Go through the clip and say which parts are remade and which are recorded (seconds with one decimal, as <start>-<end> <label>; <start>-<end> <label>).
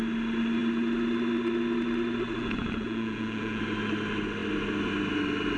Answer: 0.0-2.4 recorded; 2.4-3.6 remade; 3.6-5.6 recorded